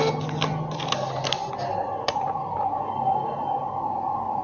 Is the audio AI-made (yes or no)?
no